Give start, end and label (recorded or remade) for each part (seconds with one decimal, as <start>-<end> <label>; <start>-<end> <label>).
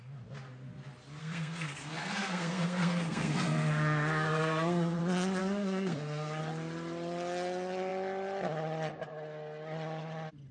0.0-1.2 recorded; 1.2-5.0 remade; 5.0-5.4 recorded; 5.4-6.4 remade; 6.4-10.5 recorded